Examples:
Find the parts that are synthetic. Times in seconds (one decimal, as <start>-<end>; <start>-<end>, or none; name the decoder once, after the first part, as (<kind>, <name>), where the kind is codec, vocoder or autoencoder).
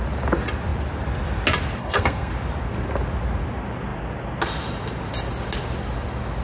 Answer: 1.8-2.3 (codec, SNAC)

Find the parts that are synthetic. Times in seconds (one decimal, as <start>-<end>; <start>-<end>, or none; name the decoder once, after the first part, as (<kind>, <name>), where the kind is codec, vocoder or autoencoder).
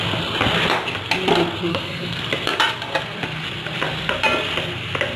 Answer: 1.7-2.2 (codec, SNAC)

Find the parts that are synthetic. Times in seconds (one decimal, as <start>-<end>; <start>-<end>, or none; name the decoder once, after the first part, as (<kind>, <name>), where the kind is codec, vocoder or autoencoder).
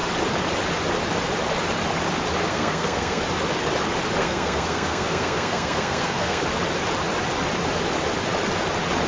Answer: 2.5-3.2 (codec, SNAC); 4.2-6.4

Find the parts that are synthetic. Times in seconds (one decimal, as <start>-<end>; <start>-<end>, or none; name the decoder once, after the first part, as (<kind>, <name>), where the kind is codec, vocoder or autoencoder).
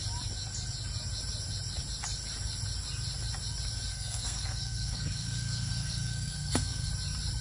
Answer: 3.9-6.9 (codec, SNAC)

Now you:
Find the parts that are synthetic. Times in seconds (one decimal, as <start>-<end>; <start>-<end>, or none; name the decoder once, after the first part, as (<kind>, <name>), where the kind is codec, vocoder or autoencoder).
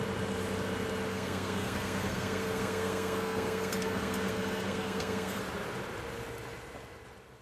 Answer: 1.1-5.4 (codec, SNAC)